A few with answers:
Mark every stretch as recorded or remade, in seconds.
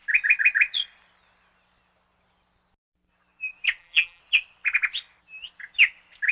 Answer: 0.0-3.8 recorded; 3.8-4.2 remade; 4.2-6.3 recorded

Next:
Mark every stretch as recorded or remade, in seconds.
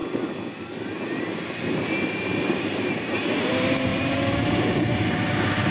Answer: 0.0-1.7 recorded; 1.7-5.7 remade